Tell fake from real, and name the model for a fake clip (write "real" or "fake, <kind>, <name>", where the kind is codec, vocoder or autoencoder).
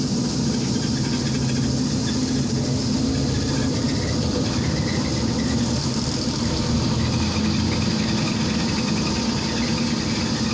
real